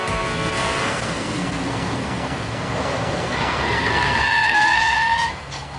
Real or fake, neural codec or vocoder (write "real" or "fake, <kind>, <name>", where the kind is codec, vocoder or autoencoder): fake, codec, SNAC